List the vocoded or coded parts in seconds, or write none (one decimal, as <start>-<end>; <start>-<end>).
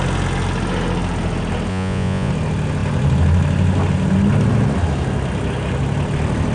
1.7-2.3